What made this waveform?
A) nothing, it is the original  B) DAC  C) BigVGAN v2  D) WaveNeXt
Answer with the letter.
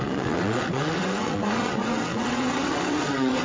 D